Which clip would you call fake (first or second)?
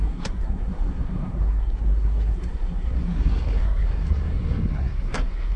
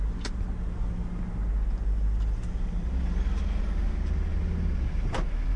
first